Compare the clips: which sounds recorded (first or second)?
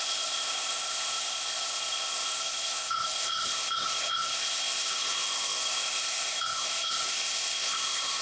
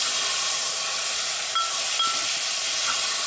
second